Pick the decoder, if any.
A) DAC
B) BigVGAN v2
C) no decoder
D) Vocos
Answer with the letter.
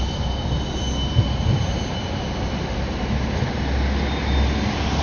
C